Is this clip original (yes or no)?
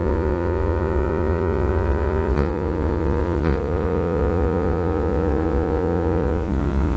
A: no